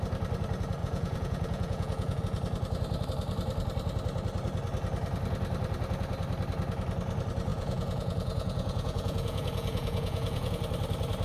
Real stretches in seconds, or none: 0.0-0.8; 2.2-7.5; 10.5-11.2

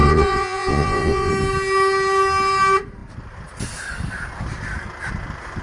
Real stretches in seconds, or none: 1.3-5.6

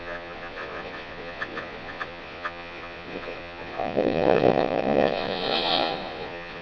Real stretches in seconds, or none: none

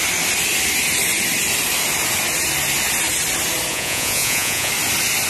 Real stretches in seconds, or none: 0.0-3.7; 4.7-5.3

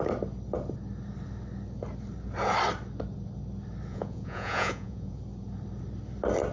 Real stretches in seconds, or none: 0.0-3.9; 5.2-6.5

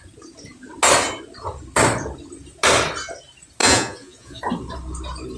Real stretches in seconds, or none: 0.0-3.6; 4.4-5.4

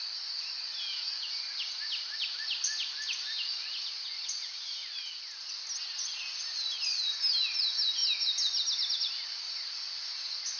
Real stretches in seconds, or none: 0.0-3.7; 4.8-10.6